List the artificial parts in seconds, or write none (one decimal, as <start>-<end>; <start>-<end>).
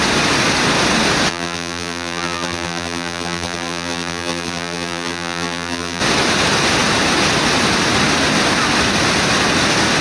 1.3-6.0